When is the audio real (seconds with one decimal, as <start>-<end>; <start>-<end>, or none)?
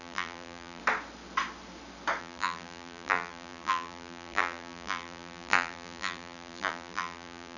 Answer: 0.8-2.2